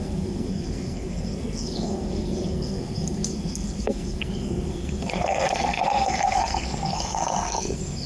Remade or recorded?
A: remade